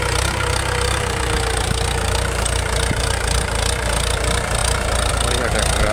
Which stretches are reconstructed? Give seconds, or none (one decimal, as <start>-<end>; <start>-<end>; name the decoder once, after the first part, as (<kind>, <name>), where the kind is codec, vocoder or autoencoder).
none